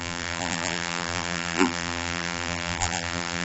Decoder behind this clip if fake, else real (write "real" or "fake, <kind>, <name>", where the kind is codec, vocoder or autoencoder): fake, vocoder, BigVGAN v2